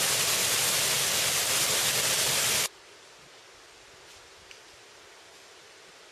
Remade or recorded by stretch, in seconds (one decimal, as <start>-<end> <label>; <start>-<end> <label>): 0.0-6.1 recorded